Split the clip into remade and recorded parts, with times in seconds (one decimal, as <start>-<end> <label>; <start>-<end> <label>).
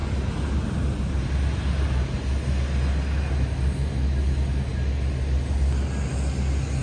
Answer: 0.0-6.8 recorded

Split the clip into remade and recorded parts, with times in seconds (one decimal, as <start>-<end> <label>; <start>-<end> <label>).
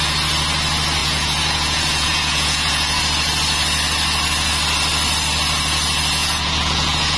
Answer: 0.0-1.0 recorded; 1.0-3.0 remade; 3.0-6.2 recorded; 6.2-7.2 remade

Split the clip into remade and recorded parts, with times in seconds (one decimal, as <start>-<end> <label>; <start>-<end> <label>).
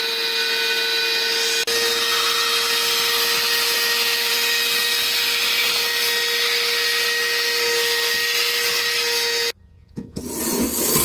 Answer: 0.0-9.6 recorded; 9.6-10.2 remade; 10.2-11.0 recorded